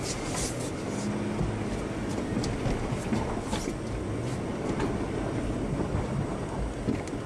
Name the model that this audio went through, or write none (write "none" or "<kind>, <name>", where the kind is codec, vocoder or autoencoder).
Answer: none